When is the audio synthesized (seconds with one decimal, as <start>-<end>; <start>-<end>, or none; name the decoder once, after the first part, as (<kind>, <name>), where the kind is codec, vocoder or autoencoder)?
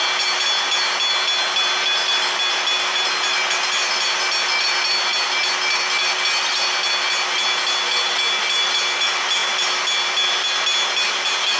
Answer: none